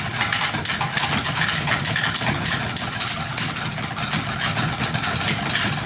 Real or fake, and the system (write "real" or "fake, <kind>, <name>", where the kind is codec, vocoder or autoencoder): real